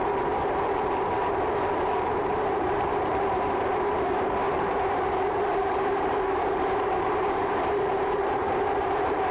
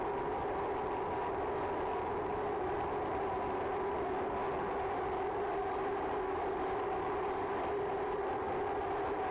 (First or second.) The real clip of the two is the second